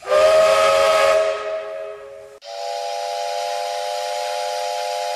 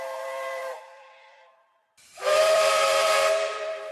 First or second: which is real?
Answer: first